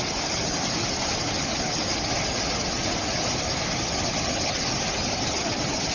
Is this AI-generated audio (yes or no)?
no